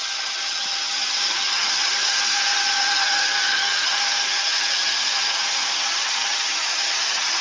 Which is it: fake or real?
fake